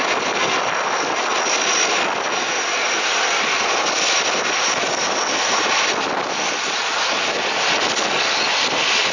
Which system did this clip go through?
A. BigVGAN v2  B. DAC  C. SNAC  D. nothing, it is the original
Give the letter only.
D